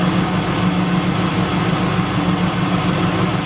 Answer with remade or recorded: recorded